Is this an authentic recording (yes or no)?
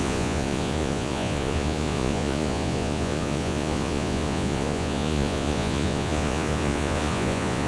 no